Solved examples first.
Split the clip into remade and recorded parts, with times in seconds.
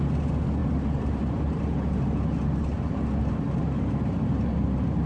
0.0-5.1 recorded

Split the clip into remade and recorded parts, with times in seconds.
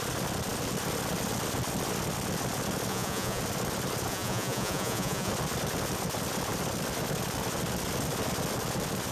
0.0-2.9 recorded; 2.9-3.4 remade; 3.4-4.1 recorded; 4.1-5.3 remade; 5.3-9.1 recorded